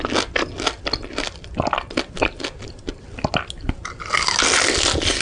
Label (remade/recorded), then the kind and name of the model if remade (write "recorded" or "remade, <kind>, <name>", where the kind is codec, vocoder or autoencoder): recorded